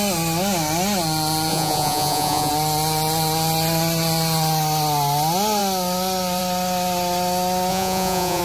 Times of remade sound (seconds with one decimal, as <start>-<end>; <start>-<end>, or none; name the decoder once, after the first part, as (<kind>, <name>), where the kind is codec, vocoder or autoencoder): 1.5-2.5 (vocoder, Vocos); 7.7-8.4